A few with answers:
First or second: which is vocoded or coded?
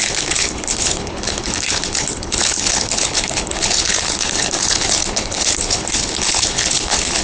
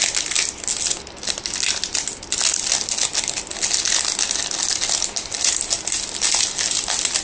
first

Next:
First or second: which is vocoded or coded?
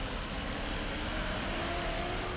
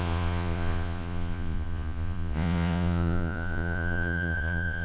second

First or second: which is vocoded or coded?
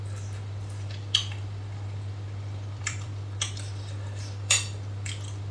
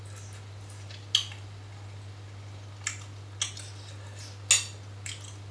first